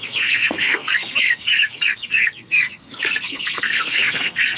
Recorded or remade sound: remade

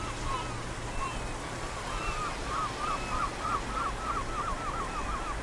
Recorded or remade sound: recorded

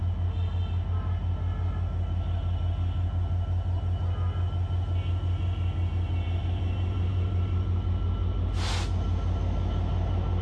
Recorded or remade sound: recorded